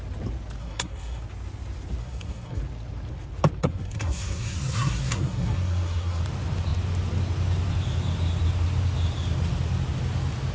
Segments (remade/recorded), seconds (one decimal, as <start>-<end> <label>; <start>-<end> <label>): 0.0-0.6 recorded; 0.6-1.2 remade; 1.2-2.0 recorded; 2.0-2.6 remade; 2.6-3.6 recorded; 3.6-6.2 remade; 6.2-10.5 recorded